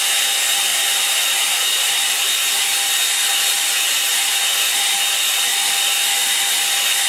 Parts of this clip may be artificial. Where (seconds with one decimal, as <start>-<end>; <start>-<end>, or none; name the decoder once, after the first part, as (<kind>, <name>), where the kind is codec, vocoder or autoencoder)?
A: 0.7-2.3 (vocoder, BigVGAN v2)

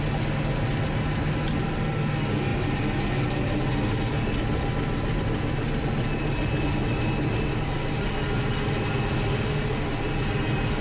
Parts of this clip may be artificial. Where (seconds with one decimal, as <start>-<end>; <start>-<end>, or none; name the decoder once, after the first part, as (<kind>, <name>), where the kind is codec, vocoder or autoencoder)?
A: none

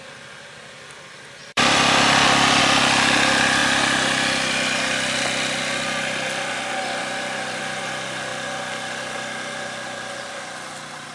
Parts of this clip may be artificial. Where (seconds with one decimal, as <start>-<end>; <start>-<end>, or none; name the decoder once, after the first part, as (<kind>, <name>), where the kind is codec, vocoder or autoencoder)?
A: 1.4-2.6 (vocoder, BigVGAN v2)